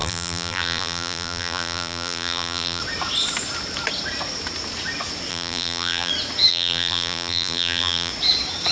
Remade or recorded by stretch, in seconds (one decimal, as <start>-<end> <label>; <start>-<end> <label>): 0.0-2.8 remade; 2.8-5.3 recorded; 5.3-6.1 remade; 6.1-6.5 recorded; 6.5-8.1 remade; 8.1-8.7 recorded